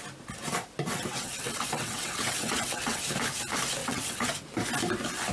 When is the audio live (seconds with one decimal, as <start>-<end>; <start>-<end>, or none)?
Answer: 0.0-1.1; 3.0-3.8; 4.3-5.3